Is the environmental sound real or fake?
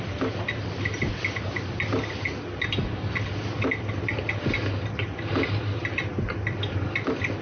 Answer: real